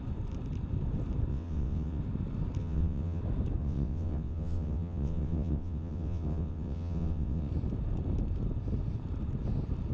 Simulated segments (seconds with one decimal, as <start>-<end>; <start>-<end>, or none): 1.3-2.0; 2.6-3.2; 3.6-7.5